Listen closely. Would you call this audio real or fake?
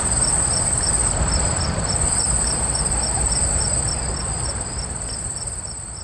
fake